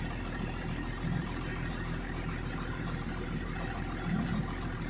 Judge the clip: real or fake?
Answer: fake